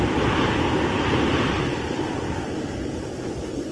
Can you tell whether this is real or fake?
real